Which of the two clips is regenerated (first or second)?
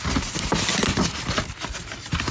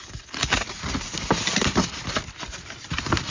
second